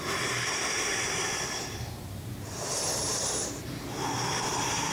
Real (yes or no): no